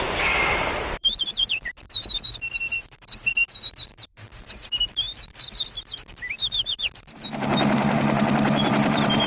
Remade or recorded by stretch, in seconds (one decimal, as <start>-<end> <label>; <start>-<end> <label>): 0.0-9.3 remade